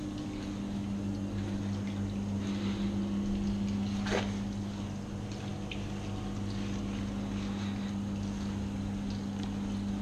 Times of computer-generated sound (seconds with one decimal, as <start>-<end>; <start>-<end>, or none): none

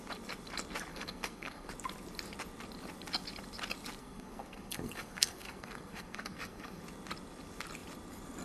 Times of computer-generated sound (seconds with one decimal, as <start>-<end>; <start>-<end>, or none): 0.9-1.7; 4.0-6.8

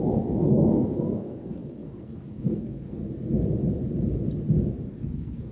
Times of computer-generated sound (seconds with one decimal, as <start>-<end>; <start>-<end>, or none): 0.0-3.0; 4.9-5.5

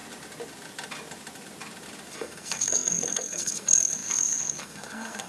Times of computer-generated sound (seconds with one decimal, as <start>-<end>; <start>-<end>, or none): 2.1-5.3

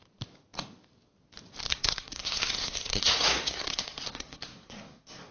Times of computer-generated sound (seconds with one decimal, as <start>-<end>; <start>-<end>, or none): 1.7-5.3

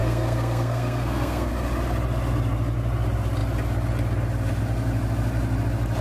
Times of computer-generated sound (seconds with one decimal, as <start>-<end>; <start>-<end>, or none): 0.0-1.5

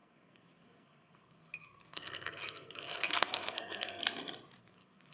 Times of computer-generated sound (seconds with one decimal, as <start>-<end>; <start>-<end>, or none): 0.0-4.0; 4.6-5.1

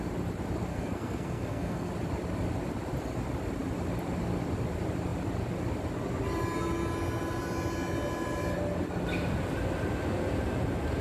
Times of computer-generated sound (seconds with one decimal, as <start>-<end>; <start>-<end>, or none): 0.7-1.9